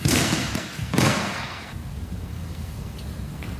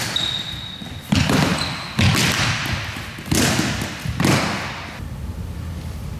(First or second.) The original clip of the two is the second